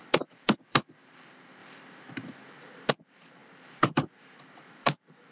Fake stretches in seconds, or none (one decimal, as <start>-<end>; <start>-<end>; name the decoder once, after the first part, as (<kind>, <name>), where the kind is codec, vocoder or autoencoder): 0.0-5.3 (vocoder, BigVGAN v2)